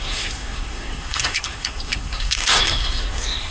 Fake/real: fake